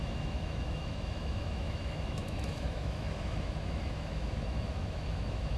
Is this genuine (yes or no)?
no